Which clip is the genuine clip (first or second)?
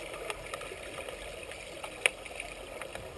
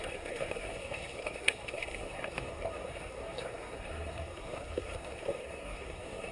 first